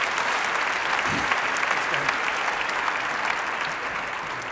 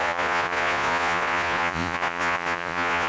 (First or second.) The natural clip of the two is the first